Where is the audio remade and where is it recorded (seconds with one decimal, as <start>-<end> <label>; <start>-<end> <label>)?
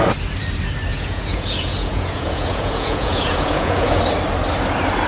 0.0-0.9 recorded; 0.9-4.0 remade; 4.0-5.1 recorded